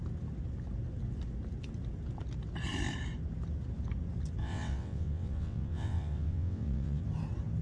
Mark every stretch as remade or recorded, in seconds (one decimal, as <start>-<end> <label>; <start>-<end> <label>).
0.0-4.4 recorded; 4.4-7.0 remade; 7.0-7.6 recorded